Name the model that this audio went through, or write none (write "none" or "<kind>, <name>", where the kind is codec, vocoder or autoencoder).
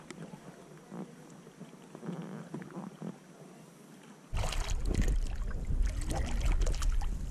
none